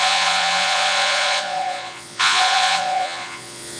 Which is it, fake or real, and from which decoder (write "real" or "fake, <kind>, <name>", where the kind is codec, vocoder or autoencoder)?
fake, vocoder, Vocos